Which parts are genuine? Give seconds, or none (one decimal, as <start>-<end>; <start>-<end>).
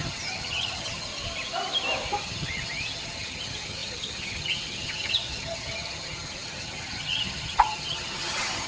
1.1-2.2